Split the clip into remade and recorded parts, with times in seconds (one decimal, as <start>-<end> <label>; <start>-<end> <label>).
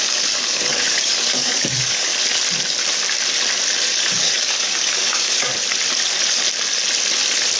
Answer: 0.0-2.1 remade; 2.1-3.9 recorded; 3.9-5.5 remade; 5.5-7.6 recorded